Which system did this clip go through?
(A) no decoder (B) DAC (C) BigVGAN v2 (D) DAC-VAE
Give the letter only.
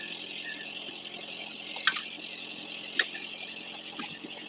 A